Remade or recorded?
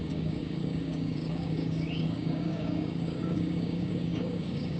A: remade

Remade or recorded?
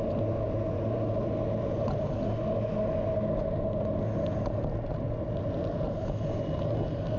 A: recorded